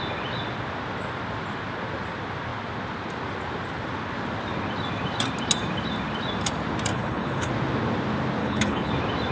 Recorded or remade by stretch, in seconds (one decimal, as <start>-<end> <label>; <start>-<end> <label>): 0.0-6.9 recorded; 6.9-7.5 remade; 7.5-8.4 recorded; 8.4-8.9 remade; 8.9-9.3 recorded